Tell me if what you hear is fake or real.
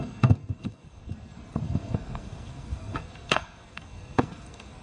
fake